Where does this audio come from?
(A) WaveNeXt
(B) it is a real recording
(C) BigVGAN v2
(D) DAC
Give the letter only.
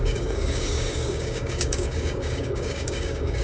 D